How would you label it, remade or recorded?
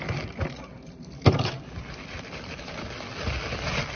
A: recorded